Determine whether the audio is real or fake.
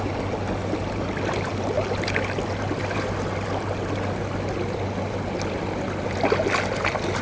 real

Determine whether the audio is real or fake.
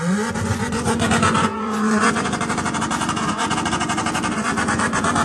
fake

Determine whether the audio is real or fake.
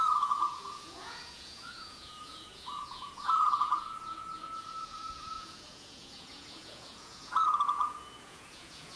fake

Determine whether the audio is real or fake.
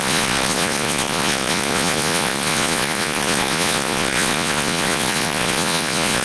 fake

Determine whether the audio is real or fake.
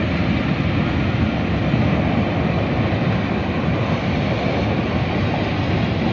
real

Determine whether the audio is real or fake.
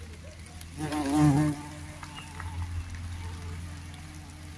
real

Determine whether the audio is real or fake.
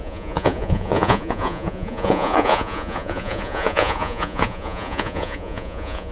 fake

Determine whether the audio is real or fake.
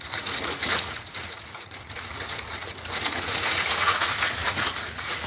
fake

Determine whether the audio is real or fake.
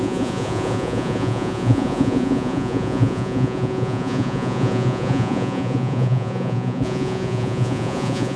fake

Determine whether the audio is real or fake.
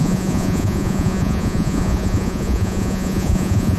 fake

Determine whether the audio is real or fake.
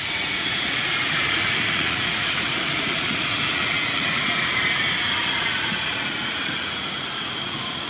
fake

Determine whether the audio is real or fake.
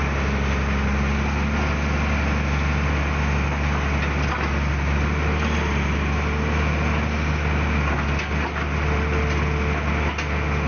real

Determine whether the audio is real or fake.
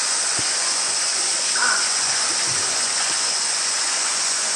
fake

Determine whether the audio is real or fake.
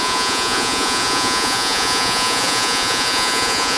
fake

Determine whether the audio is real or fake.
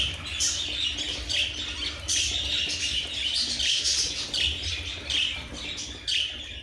real